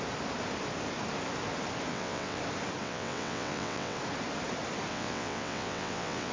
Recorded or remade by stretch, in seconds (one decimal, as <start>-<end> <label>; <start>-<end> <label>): 0.0-1.9 recorded; 1.9-2.4 remade; 2.4-2.8 recorded; 2.8-4.0 remade; 4.0-4.9 recorded; 4.9-6.3 remade